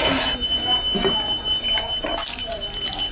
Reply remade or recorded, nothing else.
recorded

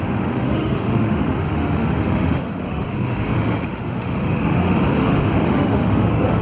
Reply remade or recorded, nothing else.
remade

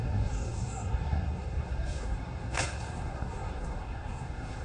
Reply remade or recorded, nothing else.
remade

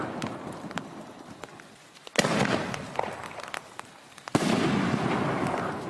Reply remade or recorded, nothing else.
recorded